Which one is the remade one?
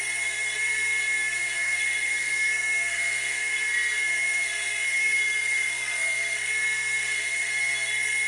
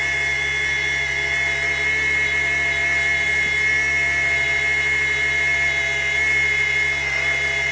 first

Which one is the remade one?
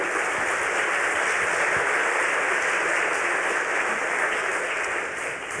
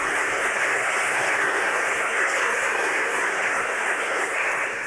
second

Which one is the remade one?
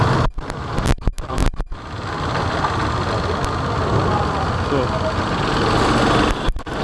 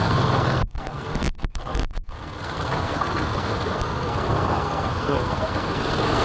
second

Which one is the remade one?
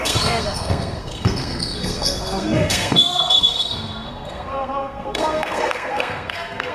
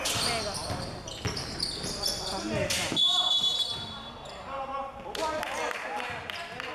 first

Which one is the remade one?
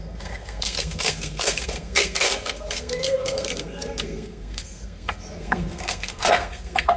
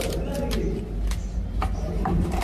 first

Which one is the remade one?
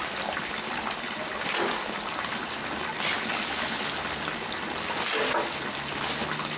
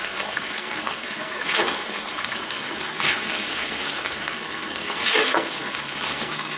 second